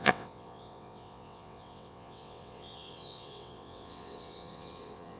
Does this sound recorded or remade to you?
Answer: remade